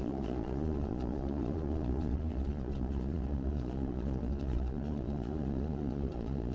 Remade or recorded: remade